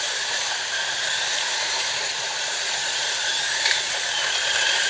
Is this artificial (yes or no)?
yes